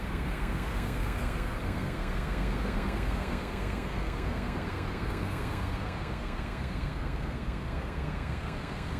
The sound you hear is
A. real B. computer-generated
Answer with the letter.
B